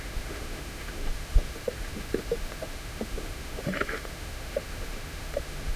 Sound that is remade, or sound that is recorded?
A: remade